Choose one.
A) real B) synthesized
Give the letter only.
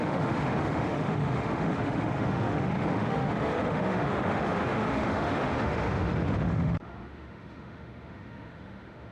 B